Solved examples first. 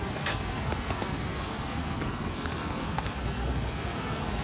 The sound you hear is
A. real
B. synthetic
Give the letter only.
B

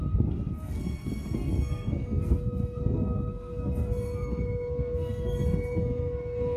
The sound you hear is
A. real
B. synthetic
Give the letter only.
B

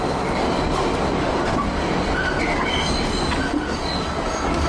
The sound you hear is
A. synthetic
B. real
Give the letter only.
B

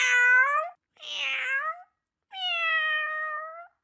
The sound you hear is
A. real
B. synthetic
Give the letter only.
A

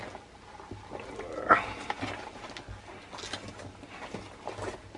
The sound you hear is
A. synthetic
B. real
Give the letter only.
B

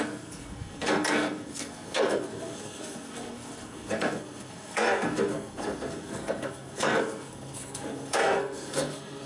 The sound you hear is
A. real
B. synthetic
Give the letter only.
B